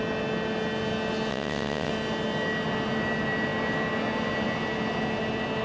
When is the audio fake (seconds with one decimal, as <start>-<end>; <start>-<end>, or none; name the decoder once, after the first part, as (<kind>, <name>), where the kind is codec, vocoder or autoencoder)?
1.3-1.9 (vocoder, WaveNeXt)